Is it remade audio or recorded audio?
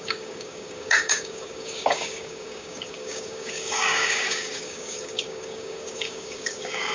remade